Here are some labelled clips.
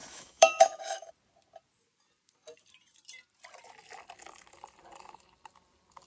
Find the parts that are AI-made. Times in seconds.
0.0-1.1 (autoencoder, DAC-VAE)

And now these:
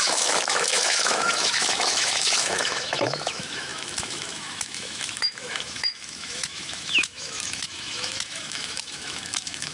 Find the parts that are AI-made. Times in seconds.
0.0-9.7 (autoencoder, DAC-VAE)

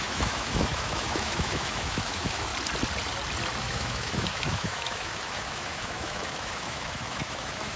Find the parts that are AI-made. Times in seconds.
0.0-2.5 (autoencoder, DAC-VAE); 3.6-7.8

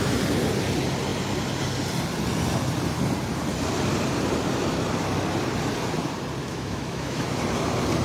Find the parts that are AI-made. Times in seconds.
6.4-7.4 (autoencoder, DAC-VAE)

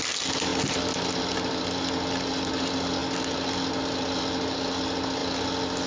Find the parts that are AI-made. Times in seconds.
none

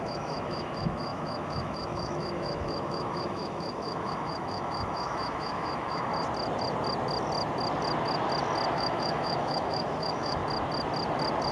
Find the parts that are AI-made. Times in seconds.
0.0-6.1 (autoencoder, DAC-VAE); 8.7-10.4

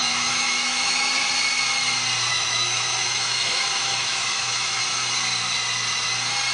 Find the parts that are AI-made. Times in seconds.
0.0-1.1 (autoencoder, DAC-VAE); 2.3-4.8